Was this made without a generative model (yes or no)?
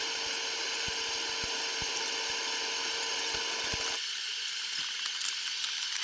yes